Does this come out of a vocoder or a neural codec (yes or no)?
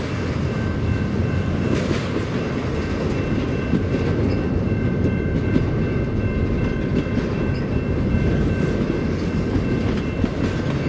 no